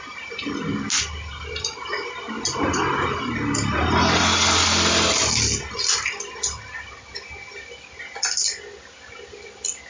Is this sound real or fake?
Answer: real